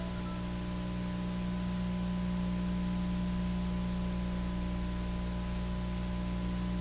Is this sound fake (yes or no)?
no